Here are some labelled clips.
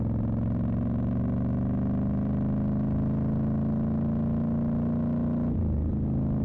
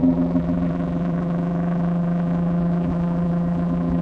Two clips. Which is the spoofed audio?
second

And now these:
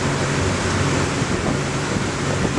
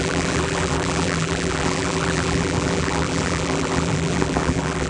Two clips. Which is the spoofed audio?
second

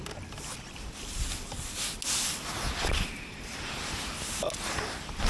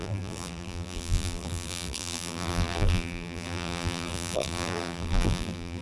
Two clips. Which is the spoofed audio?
second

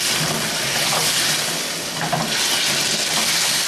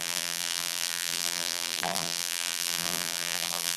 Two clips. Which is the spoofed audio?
second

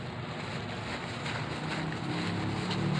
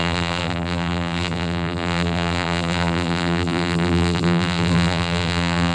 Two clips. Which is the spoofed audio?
second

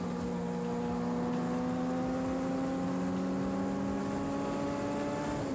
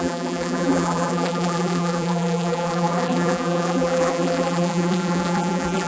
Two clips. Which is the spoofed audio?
second